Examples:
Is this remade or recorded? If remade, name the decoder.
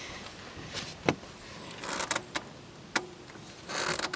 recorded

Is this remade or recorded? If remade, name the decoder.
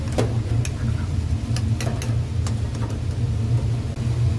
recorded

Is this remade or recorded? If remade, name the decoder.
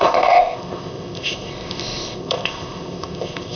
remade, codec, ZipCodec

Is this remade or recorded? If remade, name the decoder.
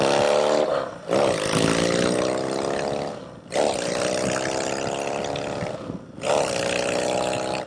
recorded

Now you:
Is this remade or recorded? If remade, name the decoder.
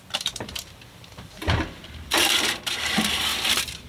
remade, vocoder, BigVGAN v2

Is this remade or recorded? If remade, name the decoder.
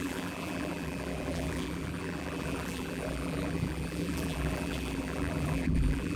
remade, vocoder, BigVGAN v2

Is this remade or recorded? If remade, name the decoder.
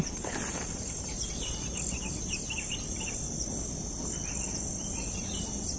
remade, vocoder, BigVGAN v2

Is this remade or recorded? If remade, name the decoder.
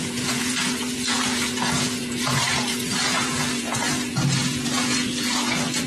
remade, vocoder, Vocos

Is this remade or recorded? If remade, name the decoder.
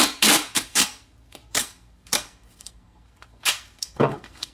remade, codec, SNAC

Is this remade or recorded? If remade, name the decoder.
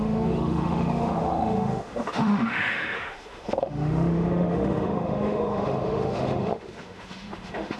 remade, autoencoder, DAC-VAE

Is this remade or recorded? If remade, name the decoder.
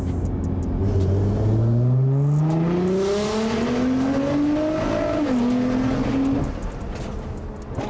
recorded